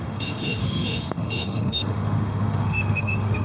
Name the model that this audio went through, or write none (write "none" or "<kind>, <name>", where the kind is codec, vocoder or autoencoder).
autoencoder, DAC-VAE